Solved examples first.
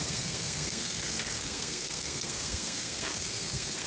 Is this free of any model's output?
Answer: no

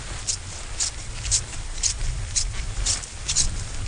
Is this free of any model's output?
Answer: yes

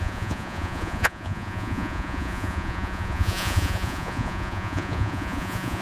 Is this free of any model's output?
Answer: no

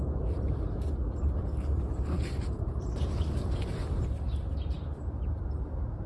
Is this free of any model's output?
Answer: no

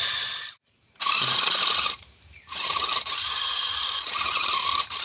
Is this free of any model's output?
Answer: no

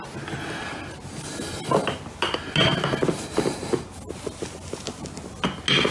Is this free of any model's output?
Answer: yes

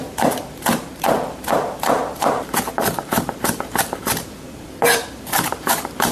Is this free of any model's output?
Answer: no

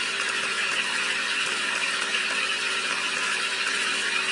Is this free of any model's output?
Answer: no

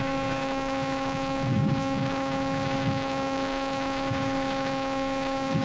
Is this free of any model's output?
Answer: no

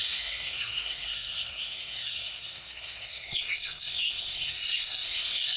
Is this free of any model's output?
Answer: no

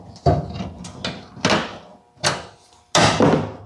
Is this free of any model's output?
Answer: yes